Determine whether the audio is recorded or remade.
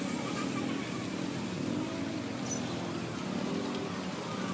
recorded